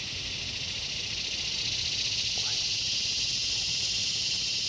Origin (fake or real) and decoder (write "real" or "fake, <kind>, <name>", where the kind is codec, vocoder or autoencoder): real